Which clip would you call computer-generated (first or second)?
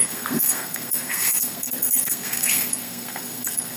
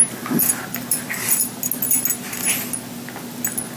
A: first